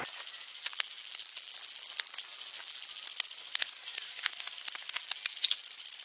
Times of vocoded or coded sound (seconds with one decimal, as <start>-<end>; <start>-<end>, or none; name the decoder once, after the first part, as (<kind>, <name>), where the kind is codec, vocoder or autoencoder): 0.6-3.0 (vocoder, BigVGAN v2); 5.0-5.6